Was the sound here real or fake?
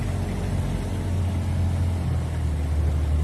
real